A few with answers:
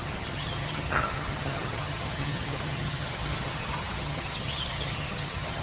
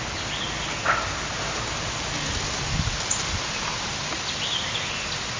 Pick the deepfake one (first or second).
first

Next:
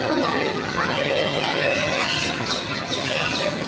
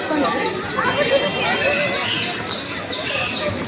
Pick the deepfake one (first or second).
first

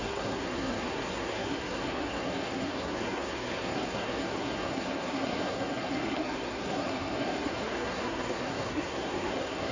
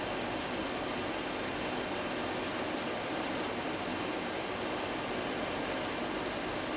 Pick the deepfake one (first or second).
first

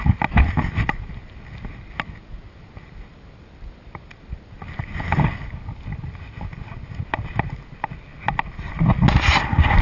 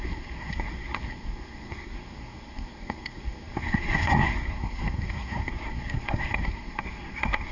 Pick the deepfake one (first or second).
second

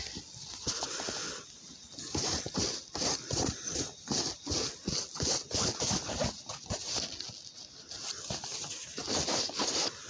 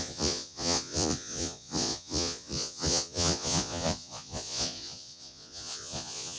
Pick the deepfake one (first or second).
second